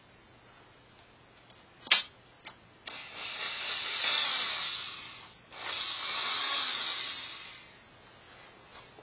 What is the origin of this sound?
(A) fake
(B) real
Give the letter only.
B